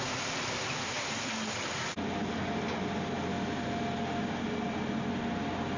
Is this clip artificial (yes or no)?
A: no